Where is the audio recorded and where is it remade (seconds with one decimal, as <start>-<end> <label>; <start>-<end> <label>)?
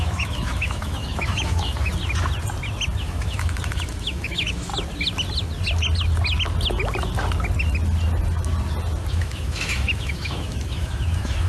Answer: 0.0-1.9 remade; 1.9-3.0 recorded; 3.0-4.7 remade; 4.7-9.1 recorded; 9.1-11.5 remade